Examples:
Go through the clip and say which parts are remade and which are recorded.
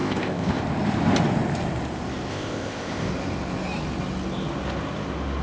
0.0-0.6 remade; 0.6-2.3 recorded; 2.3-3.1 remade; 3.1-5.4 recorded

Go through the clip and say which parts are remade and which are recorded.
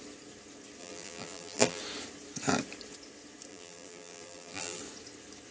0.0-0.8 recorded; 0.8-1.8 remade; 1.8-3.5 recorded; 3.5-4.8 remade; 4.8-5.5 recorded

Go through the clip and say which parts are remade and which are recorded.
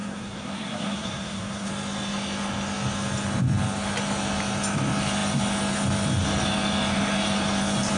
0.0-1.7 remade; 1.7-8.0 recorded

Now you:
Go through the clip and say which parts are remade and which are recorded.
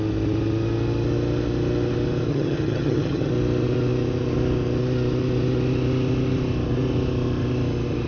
0.0-2.3 recorded; 2.3-3.3 remade; 3.3-8.1 recorded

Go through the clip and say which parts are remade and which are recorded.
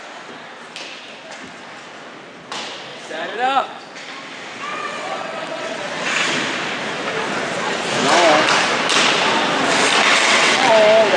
0.0-2.9 recorded; 2.9-3.8 remade; 3.8-4.7 recorded; 4.7-5.8 remade; 5.8-10.1 recorded; 10.1-10.7 remade; 10.7-11.2 recorded